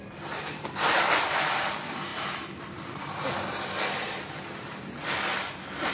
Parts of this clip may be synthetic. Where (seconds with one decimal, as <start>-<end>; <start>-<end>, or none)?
0.0-5.9